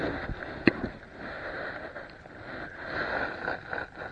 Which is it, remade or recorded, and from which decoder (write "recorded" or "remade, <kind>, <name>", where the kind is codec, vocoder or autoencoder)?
recorded